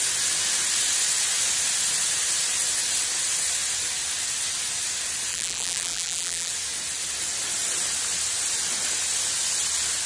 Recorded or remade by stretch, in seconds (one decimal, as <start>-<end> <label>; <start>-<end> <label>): 0.0-5.3 recorded; 5.3-6.5 remade; 6.5-10.1 recorded